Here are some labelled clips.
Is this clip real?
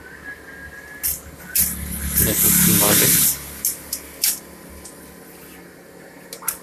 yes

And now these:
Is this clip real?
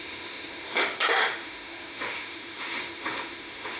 no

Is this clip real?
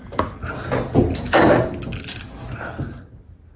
yes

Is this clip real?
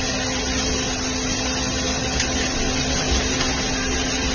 yes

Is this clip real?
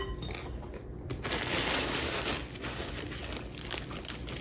yes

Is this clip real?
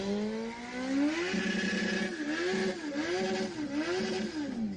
yes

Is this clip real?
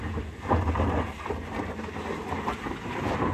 yes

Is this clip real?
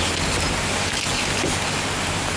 yes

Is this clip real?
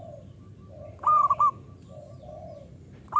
yes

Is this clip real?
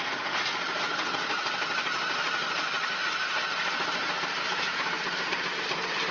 yes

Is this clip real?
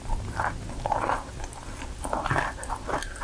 yes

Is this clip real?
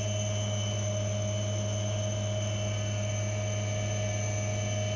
yes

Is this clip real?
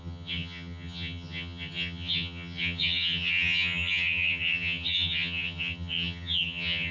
no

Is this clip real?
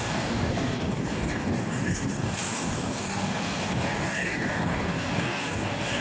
no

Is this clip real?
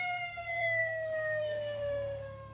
no